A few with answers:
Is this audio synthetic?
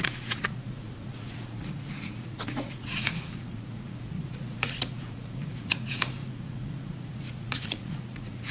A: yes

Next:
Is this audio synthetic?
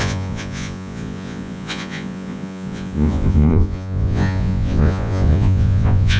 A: yes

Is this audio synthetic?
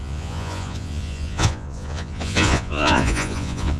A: yes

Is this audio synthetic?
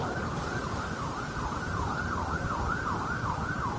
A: no